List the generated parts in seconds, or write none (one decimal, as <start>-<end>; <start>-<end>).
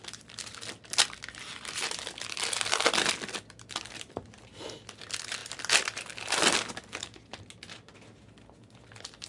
none